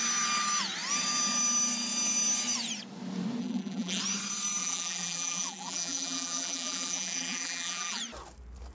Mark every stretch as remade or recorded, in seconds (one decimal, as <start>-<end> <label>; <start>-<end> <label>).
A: 0.0-3.4 recorded; 3.4-4.0 remade; 4.0-4.6 recorded; 4.6-8.0 remade; 8.0-8.7 recorded